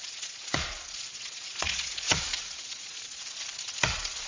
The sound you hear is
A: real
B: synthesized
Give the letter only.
B